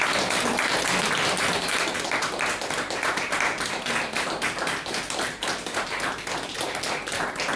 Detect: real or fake real